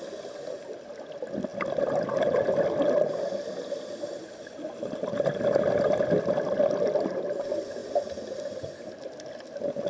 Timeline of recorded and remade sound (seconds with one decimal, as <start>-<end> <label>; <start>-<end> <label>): 0.0-9.9 recorded